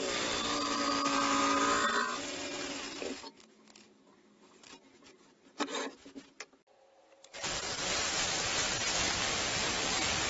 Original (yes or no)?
yes